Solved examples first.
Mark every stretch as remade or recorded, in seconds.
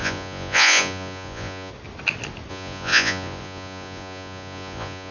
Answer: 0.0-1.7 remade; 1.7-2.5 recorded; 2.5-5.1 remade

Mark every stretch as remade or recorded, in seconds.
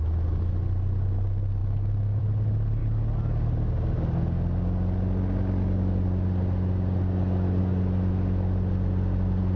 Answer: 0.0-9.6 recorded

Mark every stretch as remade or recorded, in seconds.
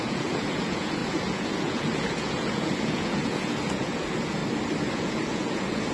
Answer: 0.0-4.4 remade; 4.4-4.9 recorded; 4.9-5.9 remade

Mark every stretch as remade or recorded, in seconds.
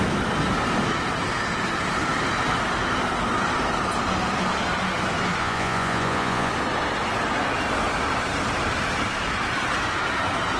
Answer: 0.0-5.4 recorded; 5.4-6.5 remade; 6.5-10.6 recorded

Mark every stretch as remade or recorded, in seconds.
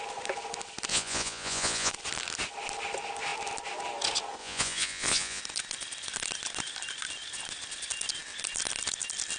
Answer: 0.0-0.9 recorded; 0.9-1.9 remade; 1.9-4.4 recorded; 4.4-5.4 remade; 5.4-9.4 recorded